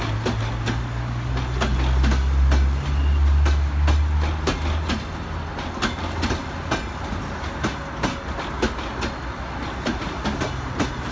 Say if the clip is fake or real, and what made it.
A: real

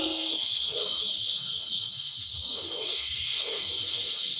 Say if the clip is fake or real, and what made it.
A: fake, codec, SNAC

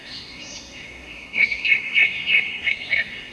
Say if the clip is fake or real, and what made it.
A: fake, codec, SNAC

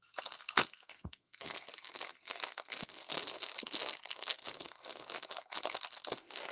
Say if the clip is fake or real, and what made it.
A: fake, codec, SNAC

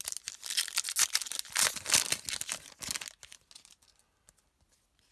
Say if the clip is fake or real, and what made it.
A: real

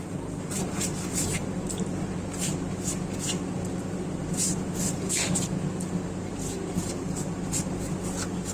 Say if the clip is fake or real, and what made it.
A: real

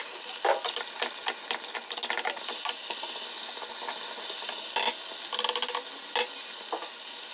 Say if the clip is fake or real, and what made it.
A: real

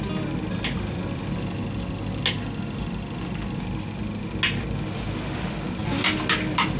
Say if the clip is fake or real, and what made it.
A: real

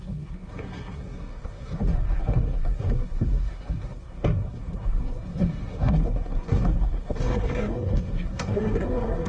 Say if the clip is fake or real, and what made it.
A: fake, codec, SNAC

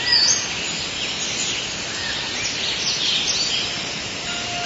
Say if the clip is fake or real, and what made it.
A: real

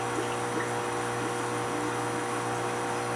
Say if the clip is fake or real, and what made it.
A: real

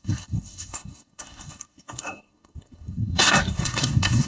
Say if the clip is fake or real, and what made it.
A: fake, codec, SNAC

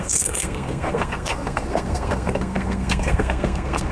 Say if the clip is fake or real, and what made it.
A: fake, codec, SNAC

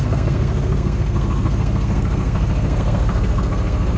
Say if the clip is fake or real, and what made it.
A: fake, codec, SNAC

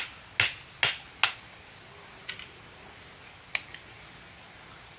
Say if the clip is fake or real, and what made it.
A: real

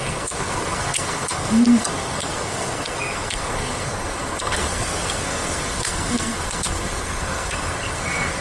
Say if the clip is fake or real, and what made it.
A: fake, codec, SNAC